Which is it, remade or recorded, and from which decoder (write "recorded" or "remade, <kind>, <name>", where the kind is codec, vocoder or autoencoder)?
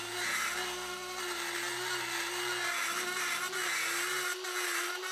recorded